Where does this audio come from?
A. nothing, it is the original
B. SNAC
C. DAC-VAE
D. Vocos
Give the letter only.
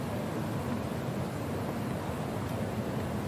A